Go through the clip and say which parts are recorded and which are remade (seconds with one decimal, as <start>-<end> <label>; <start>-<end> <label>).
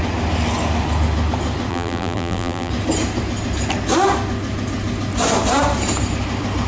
0.0-1.7 recorded; 1.7-2.7 remade; 2.7-6.7 recorded